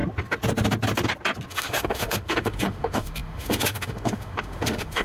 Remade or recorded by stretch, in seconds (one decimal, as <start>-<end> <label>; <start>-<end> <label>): 0.0-1.5 recorded; 1.5-5.0 remade